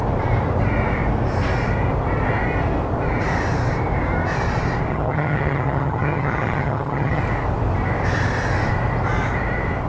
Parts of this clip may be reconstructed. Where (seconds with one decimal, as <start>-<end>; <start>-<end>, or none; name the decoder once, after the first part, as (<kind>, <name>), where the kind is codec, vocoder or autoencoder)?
4.9-7.2 (vocoder, HiFi-GAN)